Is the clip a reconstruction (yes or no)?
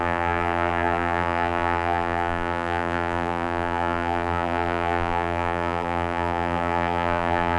yes